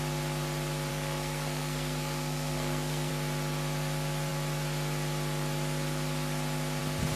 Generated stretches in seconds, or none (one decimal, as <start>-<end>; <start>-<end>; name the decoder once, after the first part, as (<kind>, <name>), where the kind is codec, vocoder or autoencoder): 0.9-3.1 (codec, SNAC)